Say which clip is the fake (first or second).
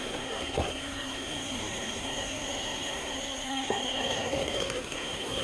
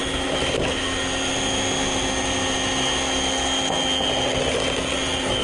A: first